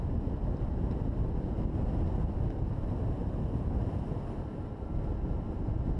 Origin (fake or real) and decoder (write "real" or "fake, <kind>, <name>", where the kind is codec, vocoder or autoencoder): real